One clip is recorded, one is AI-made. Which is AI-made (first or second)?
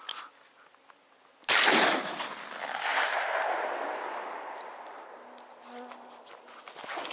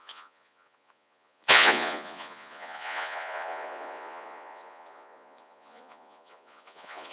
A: second